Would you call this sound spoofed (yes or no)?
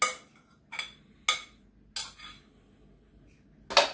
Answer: no